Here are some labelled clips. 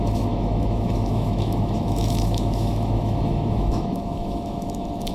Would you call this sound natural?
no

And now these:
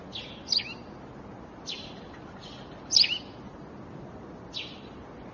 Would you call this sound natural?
yes